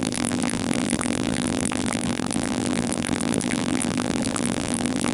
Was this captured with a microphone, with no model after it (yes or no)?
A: no